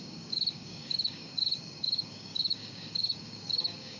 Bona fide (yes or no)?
no